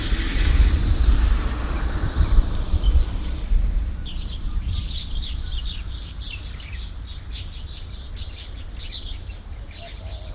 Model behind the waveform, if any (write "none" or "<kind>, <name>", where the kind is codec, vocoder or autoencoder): vocoder, BigVGAN v2